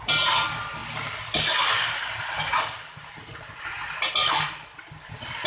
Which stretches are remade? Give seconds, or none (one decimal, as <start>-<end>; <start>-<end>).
none